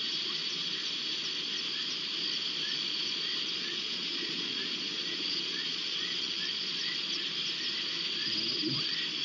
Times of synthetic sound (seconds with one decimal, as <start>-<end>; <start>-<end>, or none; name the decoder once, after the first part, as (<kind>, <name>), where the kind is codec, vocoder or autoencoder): 3.6-6.9 (vocoder, Vocos)